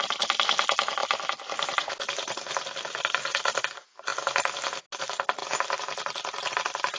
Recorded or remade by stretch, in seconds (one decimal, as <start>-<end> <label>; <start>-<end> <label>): 0.0-7.0 recorded